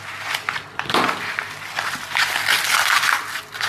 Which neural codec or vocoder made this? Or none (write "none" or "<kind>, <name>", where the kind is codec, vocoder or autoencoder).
none